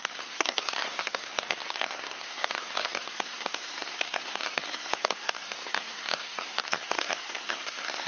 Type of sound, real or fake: fake